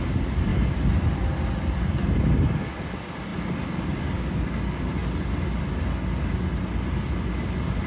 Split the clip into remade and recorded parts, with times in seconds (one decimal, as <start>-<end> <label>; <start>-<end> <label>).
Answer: 0.0-7.9 recorded